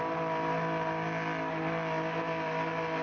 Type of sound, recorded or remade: recorded